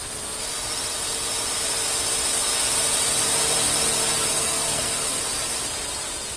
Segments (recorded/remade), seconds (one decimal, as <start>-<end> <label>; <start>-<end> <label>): 0.0-4.3 recorded; 4.3-5.2 remade; 5.2-6.4 recorded